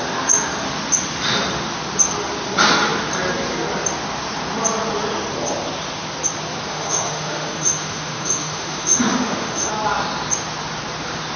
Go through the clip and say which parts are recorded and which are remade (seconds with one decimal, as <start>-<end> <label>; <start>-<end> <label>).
0.0-6.7 recorded; 6.7-9.7 remade; 9.7-11.4 recorded

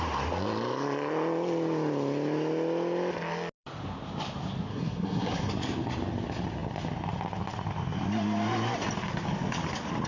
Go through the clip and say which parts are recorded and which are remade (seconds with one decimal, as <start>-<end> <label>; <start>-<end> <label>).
0.0-4.7 recorded; 4.7-5.5 remade; 5.5-10.1 recorded

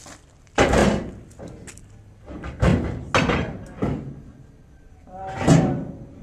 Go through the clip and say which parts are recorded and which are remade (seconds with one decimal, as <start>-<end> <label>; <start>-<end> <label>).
0.0-0.8 remade; 0.8-1.7 recorded; 1.7-2.7 remade; 2.7-4.7 recorded; 4.7-5.2 remade; 5.2-5.7 recorded; 5.7-6.2 remade